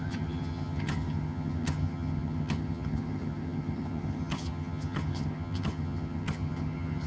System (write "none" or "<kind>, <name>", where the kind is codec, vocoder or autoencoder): vocoder, HiFi-GAN